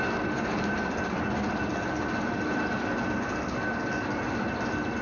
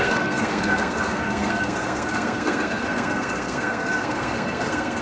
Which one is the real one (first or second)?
first